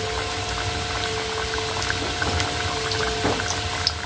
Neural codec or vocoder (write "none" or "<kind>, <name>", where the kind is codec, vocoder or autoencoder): none